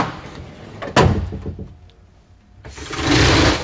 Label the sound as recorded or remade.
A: recorded